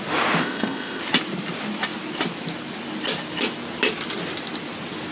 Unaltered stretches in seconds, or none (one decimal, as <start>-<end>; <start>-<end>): 0.0-0.4; 1.0-5.1